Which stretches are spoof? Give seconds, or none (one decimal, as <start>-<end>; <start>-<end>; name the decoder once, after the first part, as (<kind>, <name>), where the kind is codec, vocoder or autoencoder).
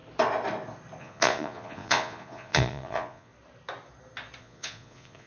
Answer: 1.0-3.3 (vocoder, Vocos); 4.4-5.3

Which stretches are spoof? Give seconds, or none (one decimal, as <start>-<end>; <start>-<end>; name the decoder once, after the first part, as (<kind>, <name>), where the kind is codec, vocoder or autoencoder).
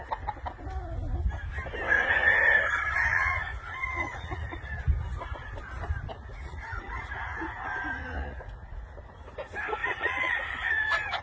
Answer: 3.1-4.8 (vocoder, Vocos); 6.1-9.0; 9.8-11.2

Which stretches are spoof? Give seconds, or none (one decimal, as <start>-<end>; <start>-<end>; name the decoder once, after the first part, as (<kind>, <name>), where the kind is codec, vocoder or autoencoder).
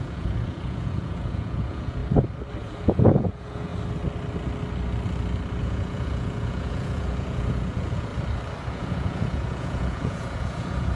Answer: 0.0-2.0 (vocoder, Vocos); 2.6-3.7; 5.6-8.1; 8.7-11.0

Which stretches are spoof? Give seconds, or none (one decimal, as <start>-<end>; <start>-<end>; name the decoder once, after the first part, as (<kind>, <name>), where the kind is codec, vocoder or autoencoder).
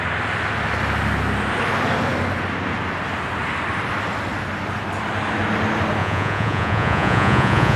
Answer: 6.0-7.8 (vocoder, Vocos)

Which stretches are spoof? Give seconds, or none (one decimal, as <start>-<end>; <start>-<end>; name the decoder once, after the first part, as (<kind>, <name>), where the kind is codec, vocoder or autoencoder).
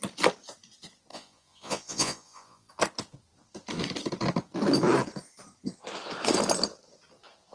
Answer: 1.1-2.7 (vocoder, Vocos)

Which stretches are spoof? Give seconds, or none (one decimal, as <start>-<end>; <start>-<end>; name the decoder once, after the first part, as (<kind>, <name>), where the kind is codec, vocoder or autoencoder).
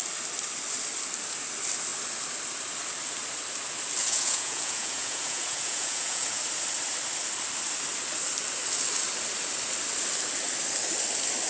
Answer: 4.0-6.4 (vocoder, Vocos)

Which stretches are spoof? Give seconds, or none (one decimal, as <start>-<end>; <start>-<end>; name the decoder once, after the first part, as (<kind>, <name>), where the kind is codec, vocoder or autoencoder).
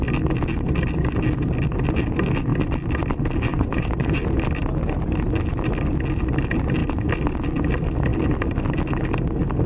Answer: 3.5-4.2 (vocoder, Vocos)